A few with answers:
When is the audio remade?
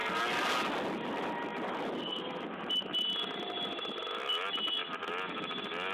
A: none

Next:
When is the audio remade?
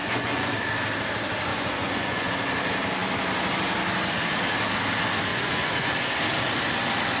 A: 0.0-0.5 (vocoder, Vocos); 1.5-2.3; 5.3-5.9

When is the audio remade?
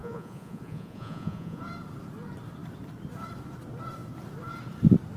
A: 0.0-1.6 (vocoder, Vocos)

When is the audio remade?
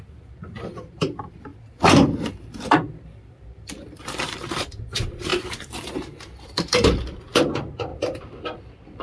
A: 0.0-9.0 (vocoder, BigVGAN v2)